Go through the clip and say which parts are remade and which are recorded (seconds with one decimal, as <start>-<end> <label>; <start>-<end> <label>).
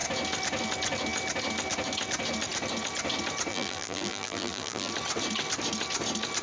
0.0-3.5 recorded; 3.5-4.9 remade; 4.9-6.4 recorded